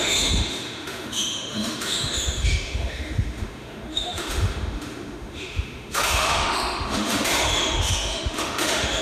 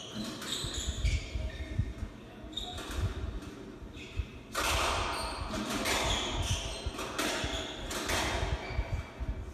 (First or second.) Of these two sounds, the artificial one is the first